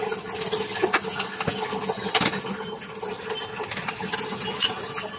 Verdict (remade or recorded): recorded